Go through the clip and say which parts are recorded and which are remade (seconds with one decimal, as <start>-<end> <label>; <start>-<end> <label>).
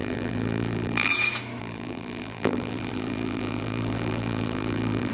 0.0-1.1 remade; 1.1-1.6 recorded; 1.6-5.1 remade